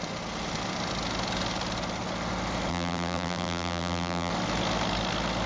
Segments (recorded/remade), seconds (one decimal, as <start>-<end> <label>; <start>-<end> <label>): 0.0-2.7 recorded; 2.7-4.3 remade; 4.3-5.5 recorded